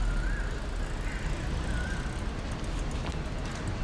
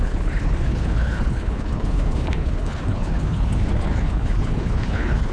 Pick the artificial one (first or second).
second